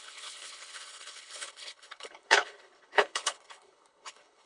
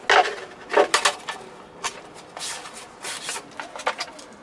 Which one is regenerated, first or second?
first